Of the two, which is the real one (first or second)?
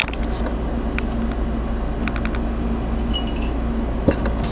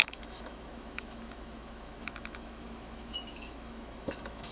first